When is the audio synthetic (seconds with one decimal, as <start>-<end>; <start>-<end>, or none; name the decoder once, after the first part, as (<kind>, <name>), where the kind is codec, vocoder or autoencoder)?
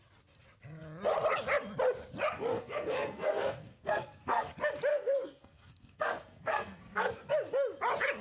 2.5-4.5 (codec, SNAC); 4.9-7.3